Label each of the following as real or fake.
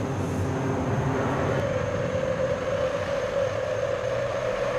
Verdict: real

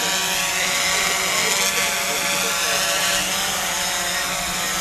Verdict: real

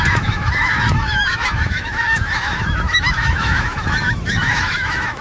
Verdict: fake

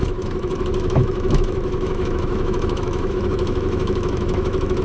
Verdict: fake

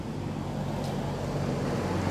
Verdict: real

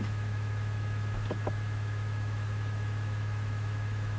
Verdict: fake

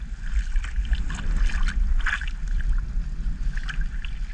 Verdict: real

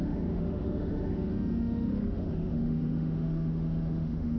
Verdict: fake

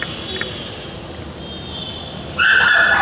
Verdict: real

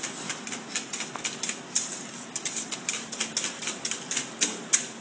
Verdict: real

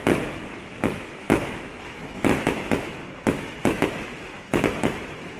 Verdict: fake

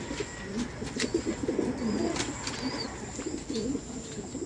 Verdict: real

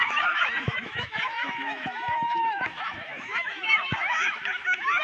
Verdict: fake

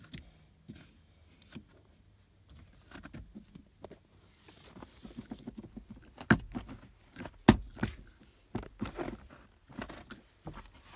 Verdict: real